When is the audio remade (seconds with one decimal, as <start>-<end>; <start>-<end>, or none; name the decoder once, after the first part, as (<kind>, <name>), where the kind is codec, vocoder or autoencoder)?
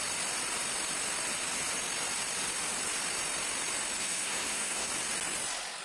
4.0-4.9 (codec, SNAC)